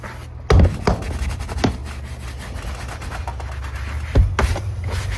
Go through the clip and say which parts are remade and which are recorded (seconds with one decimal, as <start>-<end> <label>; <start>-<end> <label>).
0.0-5.2 recorded